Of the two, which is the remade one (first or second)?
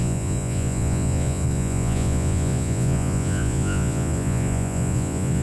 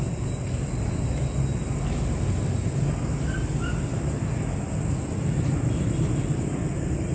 first